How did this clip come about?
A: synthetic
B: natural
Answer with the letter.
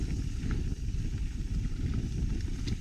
A